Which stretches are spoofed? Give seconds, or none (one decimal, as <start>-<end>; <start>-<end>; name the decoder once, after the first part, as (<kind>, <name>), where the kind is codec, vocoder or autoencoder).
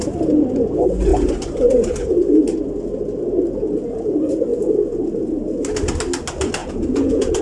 6.6-7.4 (vocoder, Vocos)